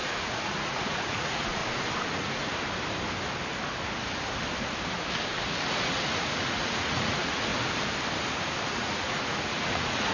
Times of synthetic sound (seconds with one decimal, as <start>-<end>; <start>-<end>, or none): 0.0-1.6; 2.1-2.5; 5.4-7.5; 8.7-10.1